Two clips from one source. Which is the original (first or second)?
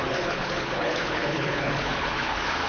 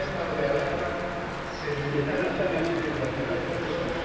second